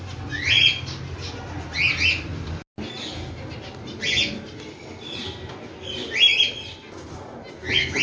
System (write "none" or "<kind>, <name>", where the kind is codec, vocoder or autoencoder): none